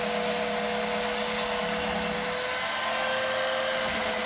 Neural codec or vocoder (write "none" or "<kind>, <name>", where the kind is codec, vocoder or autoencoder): none